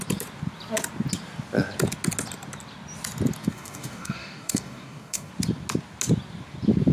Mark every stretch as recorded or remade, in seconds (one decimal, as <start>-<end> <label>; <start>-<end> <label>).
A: 0.0-3.4 recorded; 3.4-5.3 remade; 5.3-6.9 recorded